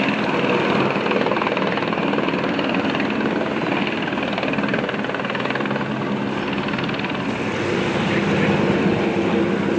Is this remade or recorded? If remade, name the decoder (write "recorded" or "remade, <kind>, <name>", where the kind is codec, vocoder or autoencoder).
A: recorded